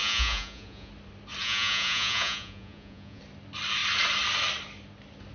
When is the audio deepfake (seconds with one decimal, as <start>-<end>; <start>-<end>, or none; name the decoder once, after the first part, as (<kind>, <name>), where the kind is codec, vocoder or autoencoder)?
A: 0.0-0.9 (vocoder, Vocos); 1.4-3.2